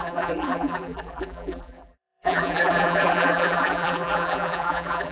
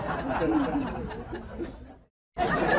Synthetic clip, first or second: first